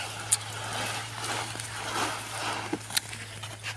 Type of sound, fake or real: real